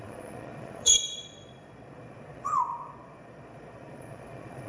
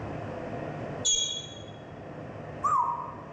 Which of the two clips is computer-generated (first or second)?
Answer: first